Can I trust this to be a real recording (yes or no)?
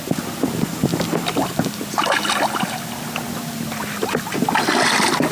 yes